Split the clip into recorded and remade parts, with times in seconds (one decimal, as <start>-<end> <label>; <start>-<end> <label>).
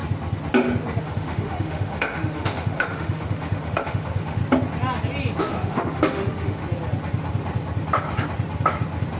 0.0-1.0 recorded; 1.0-4.4 remade; 4.4-5.4 recorded; 5.4-6.6 remade; 6.6-9.2 recorded